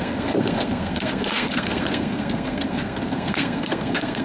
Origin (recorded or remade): remade